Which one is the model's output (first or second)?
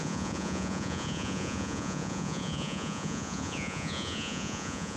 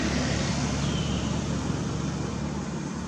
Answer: first